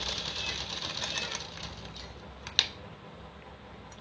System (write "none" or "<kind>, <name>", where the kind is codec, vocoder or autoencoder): none